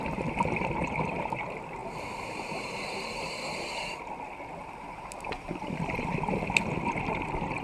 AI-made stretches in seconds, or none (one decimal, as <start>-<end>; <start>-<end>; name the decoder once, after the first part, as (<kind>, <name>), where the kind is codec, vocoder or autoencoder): none